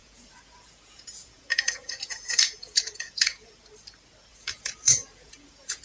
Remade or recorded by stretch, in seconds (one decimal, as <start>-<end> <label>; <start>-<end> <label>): 0.0-3.5 remade; 3.5-4.3 recorded; 4.3-5.8 remade